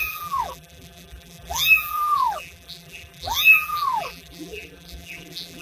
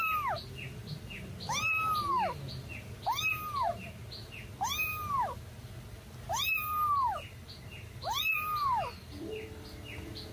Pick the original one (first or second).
second